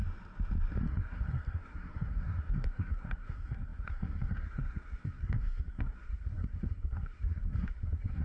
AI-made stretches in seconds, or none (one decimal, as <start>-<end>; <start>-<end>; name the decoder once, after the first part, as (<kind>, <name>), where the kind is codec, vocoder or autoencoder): 0.8-8.2 (codec, SNAC)